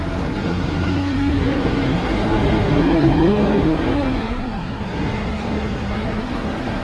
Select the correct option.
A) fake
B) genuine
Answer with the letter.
A